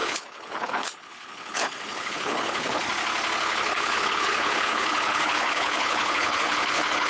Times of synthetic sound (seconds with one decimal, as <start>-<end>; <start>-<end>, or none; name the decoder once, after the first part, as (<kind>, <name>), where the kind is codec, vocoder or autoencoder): 0.0-2.8 (codec, HILCodec); 3.4-7.1